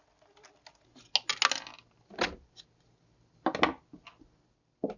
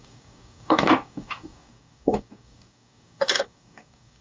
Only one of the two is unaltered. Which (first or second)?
first